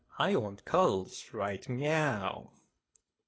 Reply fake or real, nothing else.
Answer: fake